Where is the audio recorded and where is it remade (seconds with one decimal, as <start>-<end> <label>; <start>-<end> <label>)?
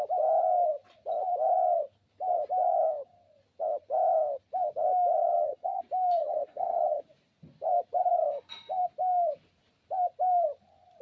0.0-5.2 recorded; 5.2-5.8 remade; 5.8-6.2 recorded; 6.2-7.0 remade; 7.0-11.0 recorded